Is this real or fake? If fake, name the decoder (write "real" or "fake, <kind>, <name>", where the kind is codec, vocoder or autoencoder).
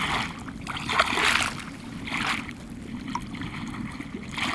real